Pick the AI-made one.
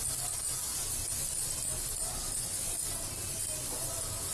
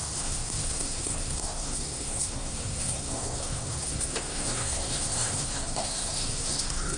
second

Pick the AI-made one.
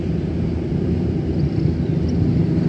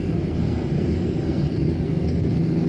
second